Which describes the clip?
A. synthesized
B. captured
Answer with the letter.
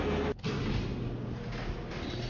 B